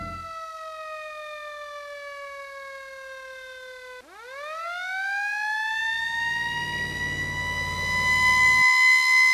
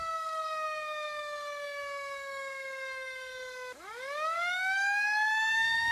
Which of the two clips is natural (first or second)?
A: first